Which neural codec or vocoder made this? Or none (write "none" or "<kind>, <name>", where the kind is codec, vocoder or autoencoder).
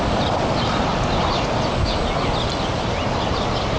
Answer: none